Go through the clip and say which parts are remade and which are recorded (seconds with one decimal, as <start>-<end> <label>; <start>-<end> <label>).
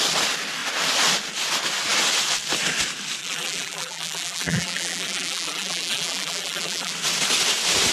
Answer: 0.0-3.2 recorded; 3.2-6.9 remade; 6.9-7.9 recorded